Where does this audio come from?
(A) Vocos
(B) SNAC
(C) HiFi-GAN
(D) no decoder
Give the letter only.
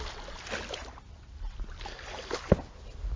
D